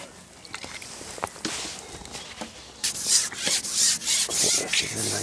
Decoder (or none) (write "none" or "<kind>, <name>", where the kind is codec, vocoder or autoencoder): none